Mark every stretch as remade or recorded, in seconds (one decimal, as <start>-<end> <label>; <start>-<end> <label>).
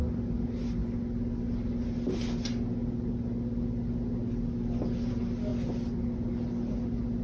0.0-7.2 recorded